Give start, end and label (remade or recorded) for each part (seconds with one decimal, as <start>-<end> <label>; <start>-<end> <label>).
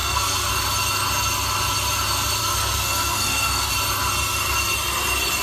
0.0-0.5 remade; 0.5-2.4 recorded; 2.4-3.7 remade; 3.7-5.4 recorded